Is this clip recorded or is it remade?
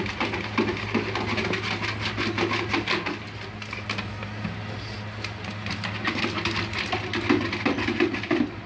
recorded